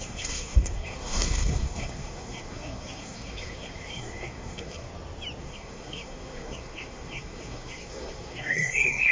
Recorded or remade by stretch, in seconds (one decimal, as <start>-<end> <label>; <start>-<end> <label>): 0.0-4.9 remade; 4.9-5.4 recorded; 5.4-9.1 remade

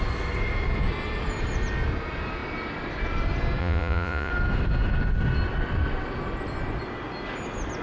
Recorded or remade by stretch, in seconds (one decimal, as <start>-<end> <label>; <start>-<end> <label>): 0.0-3.6 recorded; 3.6-4.3 remade; 4.3-7.8 recorded

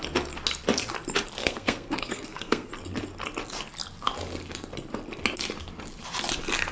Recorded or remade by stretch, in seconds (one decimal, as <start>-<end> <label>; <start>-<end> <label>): 0.0-1.4 recorded; 1.4-2.7 remade; 2.7-6.7 recorded

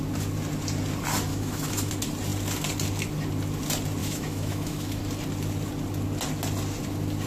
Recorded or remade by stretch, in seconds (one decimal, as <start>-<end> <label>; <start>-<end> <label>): 0.0-1.3 recorded; 1.3-1.9 remade; 1.9-4.0 recorded; 4.0-5.0 remade; 5.0-7.3 recorded

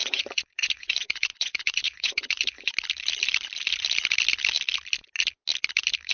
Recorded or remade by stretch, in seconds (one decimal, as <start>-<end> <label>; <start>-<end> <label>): 0.0-2.7 remade; 2.7-6.1 recorded

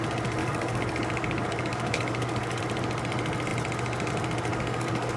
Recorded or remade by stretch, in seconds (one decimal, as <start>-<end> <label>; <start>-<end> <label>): 0.0-0.4 recorded; 0.4-2.6 remade; 2.6-4.5 recorded; 4.5-5.2 remade

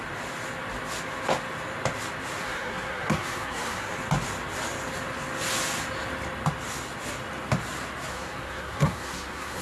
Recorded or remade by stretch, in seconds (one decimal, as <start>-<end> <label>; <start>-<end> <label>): 0.0-2.4 recorded; 2.4-3.9 remade; 3.9-8.1 recorded; 8.1-9.6 remade

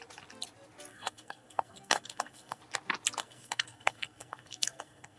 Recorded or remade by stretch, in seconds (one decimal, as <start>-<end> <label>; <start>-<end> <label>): 0.0-0.9 recorded; 0.9-2.6 remade; 2.6-3.2 recorded; 3.2-5.2 remade